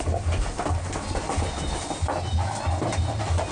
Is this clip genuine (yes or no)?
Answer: yes